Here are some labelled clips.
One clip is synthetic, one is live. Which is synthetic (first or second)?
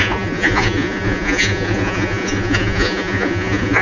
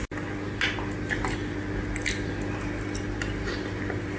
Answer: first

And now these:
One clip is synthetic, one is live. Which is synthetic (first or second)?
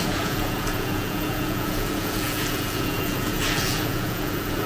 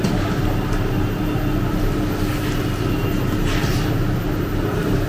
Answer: first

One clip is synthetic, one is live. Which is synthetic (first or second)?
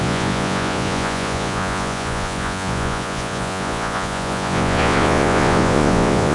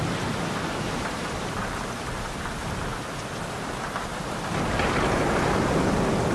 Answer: first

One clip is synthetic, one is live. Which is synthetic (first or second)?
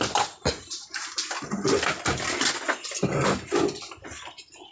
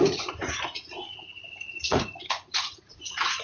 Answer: second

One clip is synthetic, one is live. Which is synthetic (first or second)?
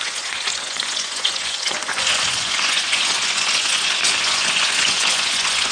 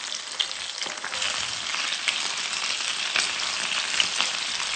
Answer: first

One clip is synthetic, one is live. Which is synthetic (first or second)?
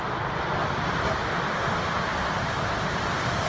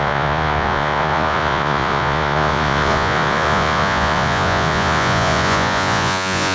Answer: second